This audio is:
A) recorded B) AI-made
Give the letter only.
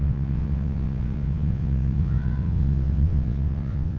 B